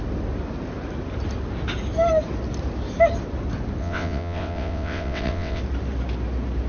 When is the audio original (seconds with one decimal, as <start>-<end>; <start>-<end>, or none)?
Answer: 0.0-3.8; 5.6-6.7